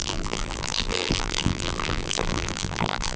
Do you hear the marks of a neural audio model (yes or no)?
yes